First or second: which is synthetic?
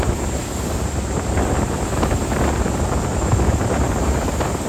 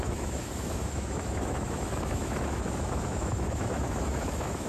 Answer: second